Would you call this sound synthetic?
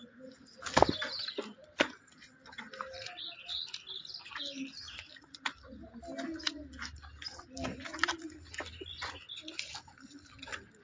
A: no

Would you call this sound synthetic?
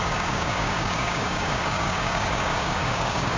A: yes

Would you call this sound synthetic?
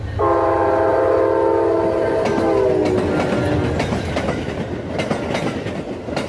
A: no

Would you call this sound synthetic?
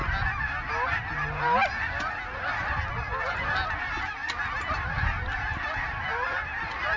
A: no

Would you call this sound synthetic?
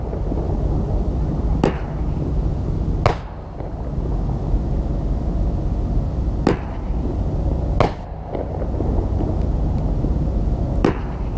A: no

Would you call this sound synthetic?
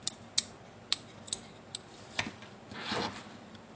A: no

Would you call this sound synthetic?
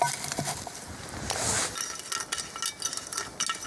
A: no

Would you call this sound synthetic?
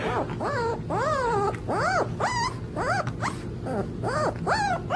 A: no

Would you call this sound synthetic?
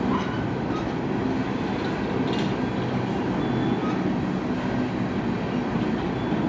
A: no